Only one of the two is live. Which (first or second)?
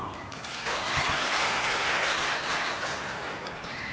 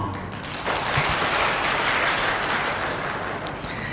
second